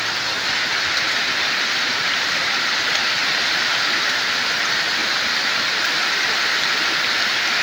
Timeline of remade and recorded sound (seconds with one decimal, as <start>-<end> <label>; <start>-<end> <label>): 0.0-2.0 recorded; 2.0-2.7 remade; 2.7-3.2 recorded; 3.2-4.6 remade; 4.6-7.6 recorded